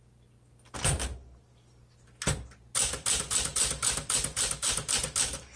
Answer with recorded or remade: recorded